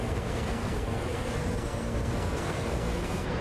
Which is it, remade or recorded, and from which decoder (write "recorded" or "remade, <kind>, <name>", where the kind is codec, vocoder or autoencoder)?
remade, codec, SNAC